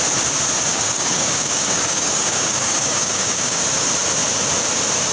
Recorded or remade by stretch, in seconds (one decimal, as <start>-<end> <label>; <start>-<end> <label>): 0.0-0.7 recorded; 0.7-3.6 remade; 3.6-5.1 recorded